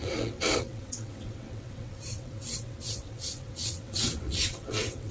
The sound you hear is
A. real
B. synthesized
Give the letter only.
B